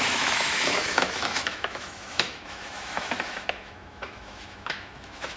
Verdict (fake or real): fake